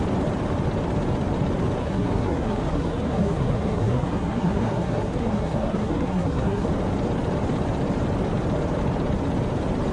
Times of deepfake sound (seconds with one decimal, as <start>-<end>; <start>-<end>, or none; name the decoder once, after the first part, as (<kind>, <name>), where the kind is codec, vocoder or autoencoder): 1.8-6.7 (codec, SNAC)